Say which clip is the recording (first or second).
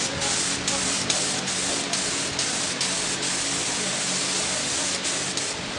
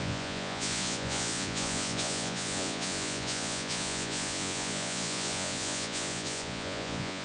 first